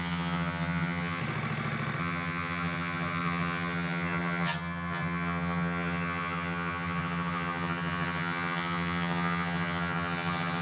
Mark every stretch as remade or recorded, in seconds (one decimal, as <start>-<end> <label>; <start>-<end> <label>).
0.0-1.2 remade; 1.2-2.0 recorded; 2.0-10.6 remade